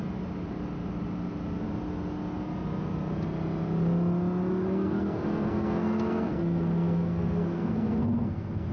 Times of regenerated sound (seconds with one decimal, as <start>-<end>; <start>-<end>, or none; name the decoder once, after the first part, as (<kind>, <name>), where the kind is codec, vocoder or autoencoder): 4.6-8.7 (codec, SNAC)